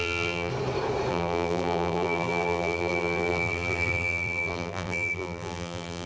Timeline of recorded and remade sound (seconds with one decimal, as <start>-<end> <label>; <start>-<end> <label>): 0.0-0.5 remade; 0.5-1.1 recorded; 1.1-6.1 remade